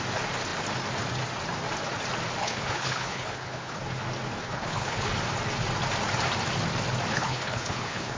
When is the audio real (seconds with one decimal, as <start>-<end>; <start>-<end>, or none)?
0.0-2.4; 3.8-4.4; 5.1-7.1